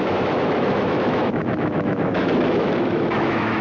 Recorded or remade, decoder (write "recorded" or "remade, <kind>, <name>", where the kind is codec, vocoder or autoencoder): remade, autoencoder, DAC-VAE